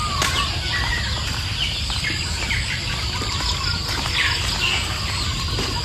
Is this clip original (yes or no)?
yes